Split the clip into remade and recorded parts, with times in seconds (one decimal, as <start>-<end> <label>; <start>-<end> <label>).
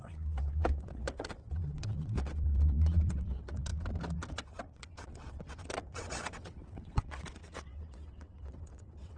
0.0-3.7 remade; 3.7-4.3 recorded; 4.3-9.2 remade